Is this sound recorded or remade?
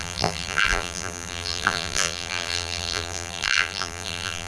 remade